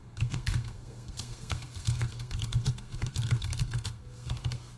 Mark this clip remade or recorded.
remade